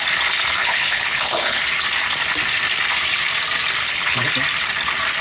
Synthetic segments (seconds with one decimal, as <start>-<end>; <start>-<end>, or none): 0.6-1.6; 3.8-4.3